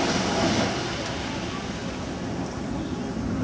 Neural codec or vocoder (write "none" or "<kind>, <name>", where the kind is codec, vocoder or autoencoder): none